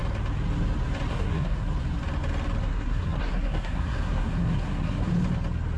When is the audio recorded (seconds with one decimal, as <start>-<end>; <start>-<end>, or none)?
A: 0.0-1.1; 1.7-2.6; 5.1-5.8